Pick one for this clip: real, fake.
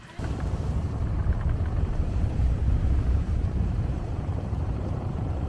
fake